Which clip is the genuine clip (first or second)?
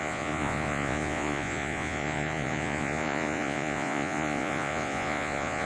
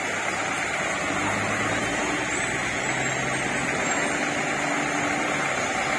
second